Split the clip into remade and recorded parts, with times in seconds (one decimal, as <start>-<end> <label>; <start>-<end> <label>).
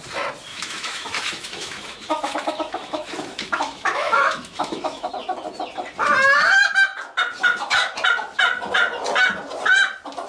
0.0-0.5 recorded; 0.5-5.1 remade; 5.1-10.3 recorded